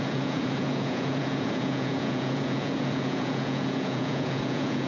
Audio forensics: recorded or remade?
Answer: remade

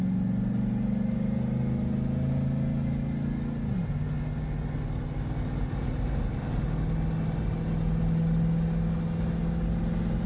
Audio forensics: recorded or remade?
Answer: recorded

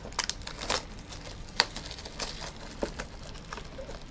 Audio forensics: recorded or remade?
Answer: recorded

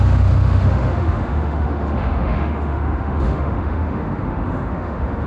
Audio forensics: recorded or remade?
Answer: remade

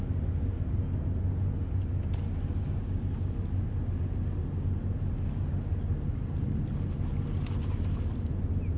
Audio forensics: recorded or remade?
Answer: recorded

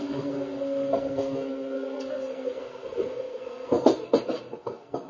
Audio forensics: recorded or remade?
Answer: remade